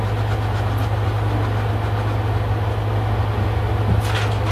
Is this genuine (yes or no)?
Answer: yes